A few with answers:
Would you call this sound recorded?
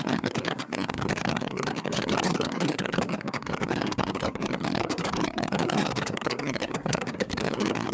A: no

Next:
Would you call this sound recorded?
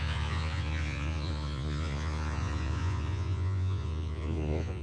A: no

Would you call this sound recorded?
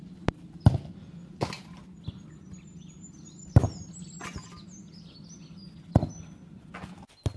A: yes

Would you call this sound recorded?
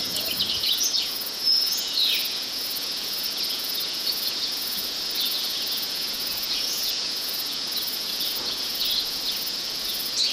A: no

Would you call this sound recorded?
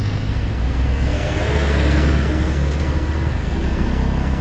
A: no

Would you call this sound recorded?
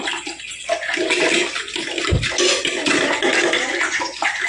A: yes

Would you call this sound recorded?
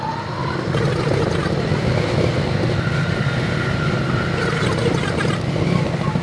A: yes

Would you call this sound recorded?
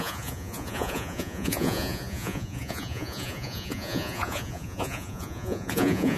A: no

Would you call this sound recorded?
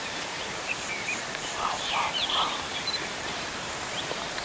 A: no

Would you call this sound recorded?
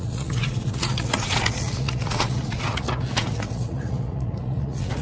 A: no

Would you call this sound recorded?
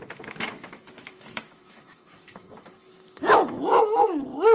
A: no